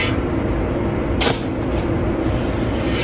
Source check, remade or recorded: recorded